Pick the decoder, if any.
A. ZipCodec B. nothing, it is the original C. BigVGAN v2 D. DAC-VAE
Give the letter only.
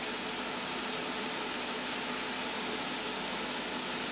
B